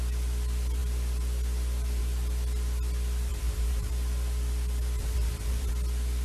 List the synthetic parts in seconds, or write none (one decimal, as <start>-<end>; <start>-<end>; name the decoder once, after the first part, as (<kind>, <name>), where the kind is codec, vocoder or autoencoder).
3.3-3.9 (vocoder, BigVGAN v2); 5.0-5.7